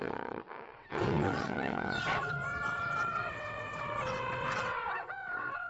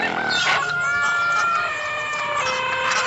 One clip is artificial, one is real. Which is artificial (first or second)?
first